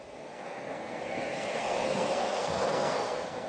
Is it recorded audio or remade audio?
remade